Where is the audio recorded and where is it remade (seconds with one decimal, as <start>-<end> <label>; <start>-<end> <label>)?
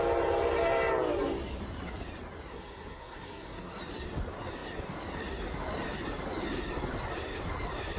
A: 0.0-2.5 recorded; 2.5-3.8 remade; 3.8-8.0 recorded